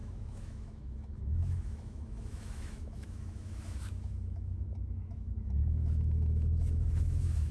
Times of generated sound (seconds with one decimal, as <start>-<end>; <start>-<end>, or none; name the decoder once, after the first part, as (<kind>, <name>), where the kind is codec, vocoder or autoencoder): 0.0-7.5 (autoencoder, DAC-VAE)